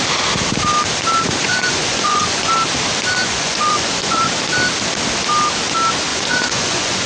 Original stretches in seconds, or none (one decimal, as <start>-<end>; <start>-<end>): 0.0-1.4; 2.5-3.2; 4.3-6.1